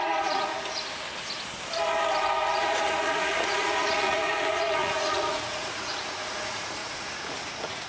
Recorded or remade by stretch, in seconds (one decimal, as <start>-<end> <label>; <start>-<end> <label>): 0.0-0.5 remade; 0.5-2.4 recorded; 2.4-7.9 remade